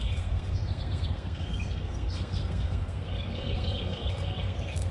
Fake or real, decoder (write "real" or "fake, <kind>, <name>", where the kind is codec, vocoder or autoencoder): fake, codec, SNAC